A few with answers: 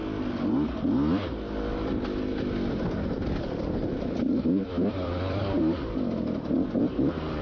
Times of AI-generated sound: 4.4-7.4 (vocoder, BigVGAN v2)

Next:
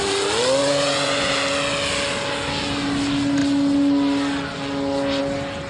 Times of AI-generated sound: 0.6-1.3 (vocoder, Vocos)

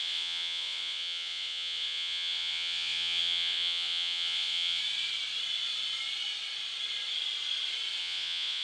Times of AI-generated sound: 0.0-4.8 (vocoder, Vocos); 8.0-8.6